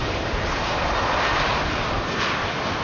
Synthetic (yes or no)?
yes